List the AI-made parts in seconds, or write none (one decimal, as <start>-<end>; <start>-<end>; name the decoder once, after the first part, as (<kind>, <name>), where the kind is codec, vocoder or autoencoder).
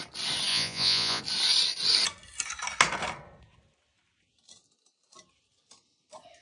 0.5-1.2 (vocoder, Vocos)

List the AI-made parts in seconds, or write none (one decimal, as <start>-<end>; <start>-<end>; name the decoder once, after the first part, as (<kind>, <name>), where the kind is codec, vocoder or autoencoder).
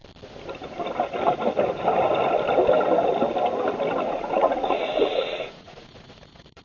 4.0-6.6 (vocoder, Vocos)